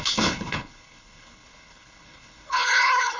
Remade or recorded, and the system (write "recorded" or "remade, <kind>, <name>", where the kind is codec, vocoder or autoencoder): remade, codec, HILCodec